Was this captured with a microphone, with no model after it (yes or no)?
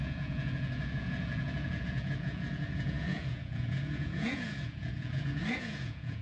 no